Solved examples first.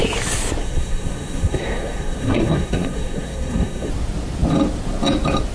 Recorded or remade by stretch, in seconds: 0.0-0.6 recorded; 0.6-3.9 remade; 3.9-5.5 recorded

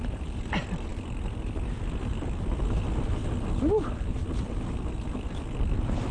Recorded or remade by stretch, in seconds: 0.0-6.1 recorded

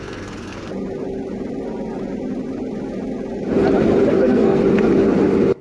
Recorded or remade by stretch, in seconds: 0.0-0.7 remade; 0.7-4.1 recorded; 4.1-4.6 remade; 4.6-5.6 recorded

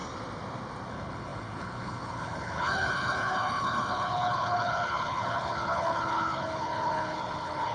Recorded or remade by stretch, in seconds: 0.0-0.9 recorded; 0.9-7.7 remade

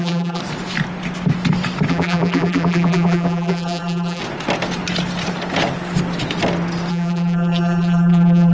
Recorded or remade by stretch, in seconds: 0.0-0.4 remade; 0.4-1.9 recorded; 1.9-4.2 remade; 4.2-6.9 recorded; 6.9-8.5 remade

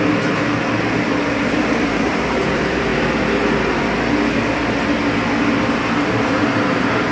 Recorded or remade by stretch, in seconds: 0.0-2.9 remade; 2.9-6.3 recorded; 6.3-7.1 remade